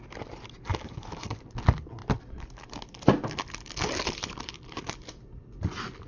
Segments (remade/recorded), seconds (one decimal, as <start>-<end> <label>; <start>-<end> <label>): 0.0-0.7 recorded; 0.7-1.4 remade; 1.4-6.1 recorded